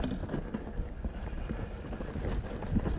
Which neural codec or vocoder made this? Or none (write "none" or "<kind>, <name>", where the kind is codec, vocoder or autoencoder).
none